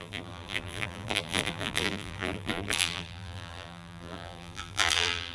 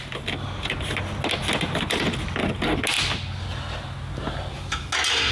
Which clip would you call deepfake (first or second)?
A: first